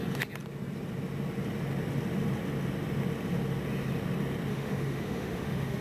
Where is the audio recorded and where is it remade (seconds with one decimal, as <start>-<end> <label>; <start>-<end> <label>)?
0.0-4.5 recorded; 4.5-5.8 remade